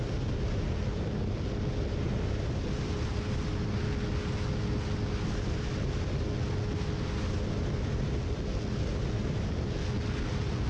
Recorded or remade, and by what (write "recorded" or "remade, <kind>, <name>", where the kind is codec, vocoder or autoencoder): recorded